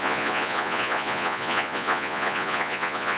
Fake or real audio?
fake